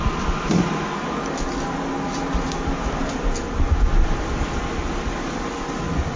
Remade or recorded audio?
recorded